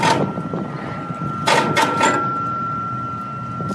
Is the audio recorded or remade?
recorded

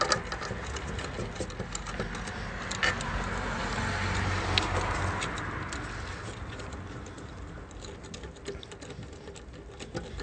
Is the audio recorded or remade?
recorded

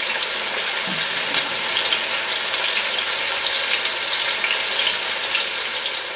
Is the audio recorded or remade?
recorded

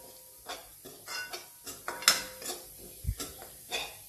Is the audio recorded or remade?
recorded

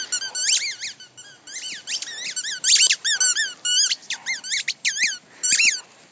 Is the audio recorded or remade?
recorded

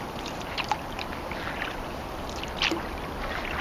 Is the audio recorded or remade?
recorded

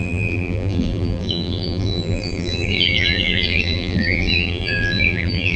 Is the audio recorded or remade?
remade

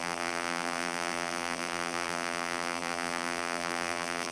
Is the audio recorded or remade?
remade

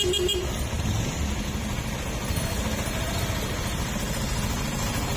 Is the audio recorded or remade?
recorded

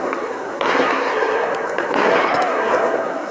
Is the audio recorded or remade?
remade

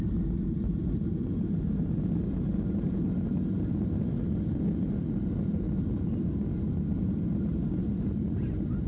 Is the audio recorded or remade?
recorded